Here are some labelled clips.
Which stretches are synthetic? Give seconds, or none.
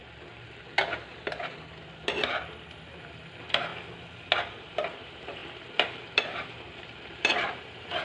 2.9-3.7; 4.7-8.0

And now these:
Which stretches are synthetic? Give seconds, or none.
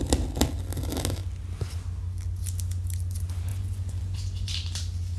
3.5-4.5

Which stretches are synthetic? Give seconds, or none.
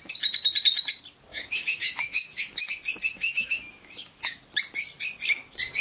1.3-2.7; 3.1-4.4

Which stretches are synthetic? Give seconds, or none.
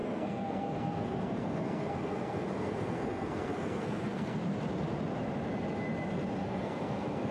0.0-4.4; 6.4-7.3